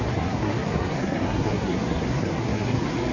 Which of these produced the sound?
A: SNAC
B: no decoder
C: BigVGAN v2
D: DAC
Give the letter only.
A